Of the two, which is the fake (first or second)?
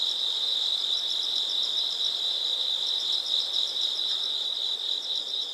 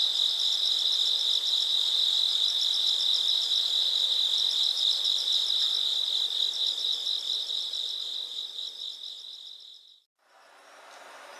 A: first